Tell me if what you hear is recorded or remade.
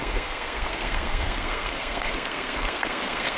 remade